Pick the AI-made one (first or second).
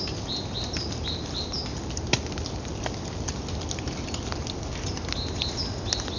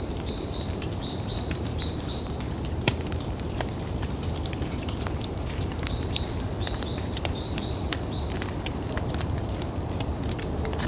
second